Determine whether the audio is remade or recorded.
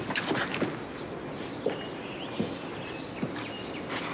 recorded